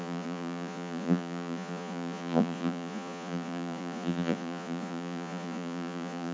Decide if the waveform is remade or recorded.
remade